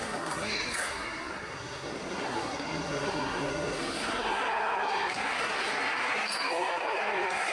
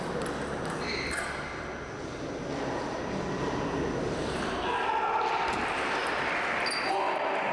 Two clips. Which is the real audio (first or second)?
second